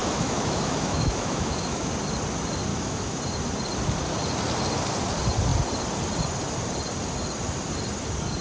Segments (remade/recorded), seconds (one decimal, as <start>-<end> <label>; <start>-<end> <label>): 0.0-1.9 remade; 1.9-2.7 recorded; 2.7-3.2 remade; 3.2-8.4 recorded